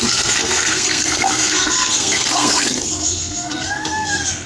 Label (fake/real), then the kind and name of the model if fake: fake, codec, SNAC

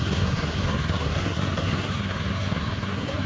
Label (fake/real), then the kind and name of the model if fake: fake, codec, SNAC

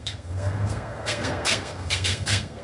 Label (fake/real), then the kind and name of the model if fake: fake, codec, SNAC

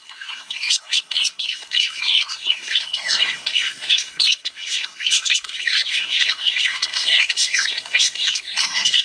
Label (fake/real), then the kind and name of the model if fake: fake, codec, SNAC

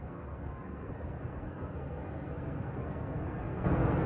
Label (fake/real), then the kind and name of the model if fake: fake, codec, SNAC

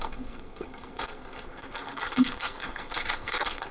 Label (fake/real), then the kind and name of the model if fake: fake, codec, SNAC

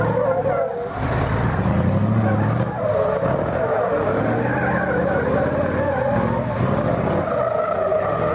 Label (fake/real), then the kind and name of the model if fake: real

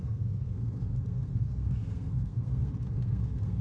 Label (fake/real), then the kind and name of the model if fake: fake, codec, SNAC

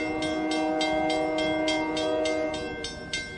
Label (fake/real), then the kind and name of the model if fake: real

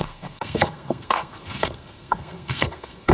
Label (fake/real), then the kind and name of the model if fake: fake, codec, SNAC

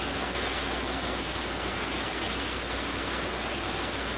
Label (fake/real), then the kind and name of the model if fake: fake, codec, SNAC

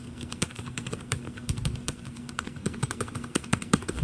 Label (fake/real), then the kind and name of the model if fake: fake, codec, SNAC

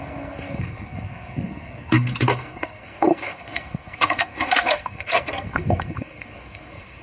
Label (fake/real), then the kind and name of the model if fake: fake, codec, SNAC